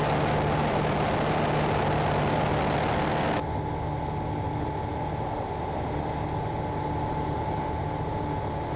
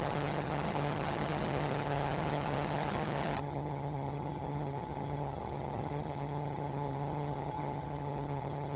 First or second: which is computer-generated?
second